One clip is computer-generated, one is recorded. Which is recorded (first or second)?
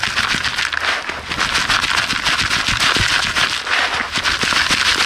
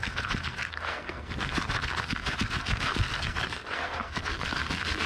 first